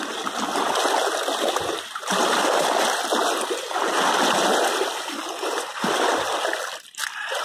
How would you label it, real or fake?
real